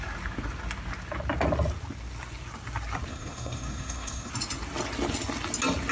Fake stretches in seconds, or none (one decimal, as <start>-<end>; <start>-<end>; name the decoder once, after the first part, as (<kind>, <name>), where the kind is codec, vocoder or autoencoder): 3.1-4.3 (codec, SNAC)